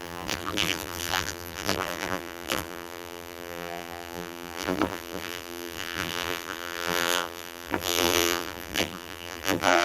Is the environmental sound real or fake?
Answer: fake